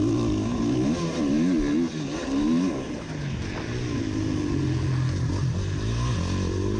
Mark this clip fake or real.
real